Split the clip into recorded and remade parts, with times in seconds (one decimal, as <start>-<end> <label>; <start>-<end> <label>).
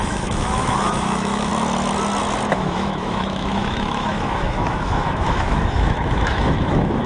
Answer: 0.0-1.5 remade; 1.5-2.5 recorded; 2.5-7.1 remade